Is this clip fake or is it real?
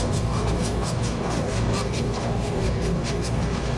fake